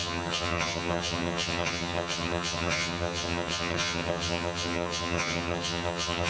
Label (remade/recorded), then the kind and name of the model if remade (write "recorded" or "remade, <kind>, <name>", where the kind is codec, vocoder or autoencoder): remade, vocoder, HiFi-GAN